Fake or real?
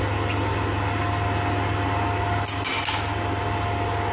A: real